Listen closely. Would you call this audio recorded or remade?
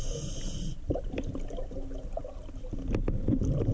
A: recorded